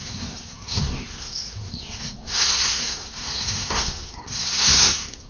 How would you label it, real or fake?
fake